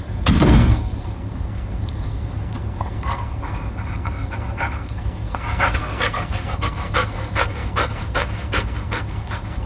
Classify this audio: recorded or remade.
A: remade